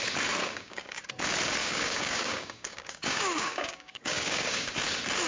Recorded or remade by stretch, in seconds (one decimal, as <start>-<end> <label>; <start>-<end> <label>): 0.0-0.4 recorded; 0.4-1.0 remade; 1.0-1.6 recorded; 1.6-4.8 remade; 4.8-5.3 recorded